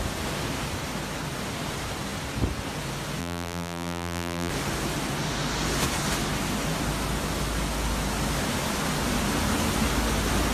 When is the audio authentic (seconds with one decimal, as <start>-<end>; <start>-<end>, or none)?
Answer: 0.0-3.2; 4.5-10.5